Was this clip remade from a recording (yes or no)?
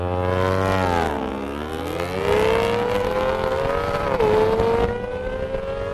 no